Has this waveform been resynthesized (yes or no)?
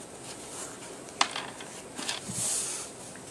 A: no